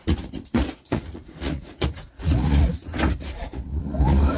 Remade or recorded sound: remade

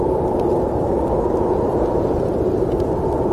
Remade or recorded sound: recorded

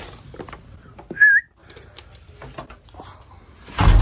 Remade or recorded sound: recorded